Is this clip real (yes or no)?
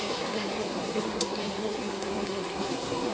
no